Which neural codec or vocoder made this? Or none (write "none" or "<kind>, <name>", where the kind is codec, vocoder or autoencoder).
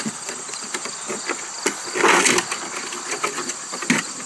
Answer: none